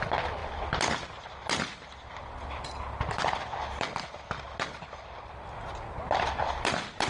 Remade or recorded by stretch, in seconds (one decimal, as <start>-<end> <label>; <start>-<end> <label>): 0.0-7.1 recorded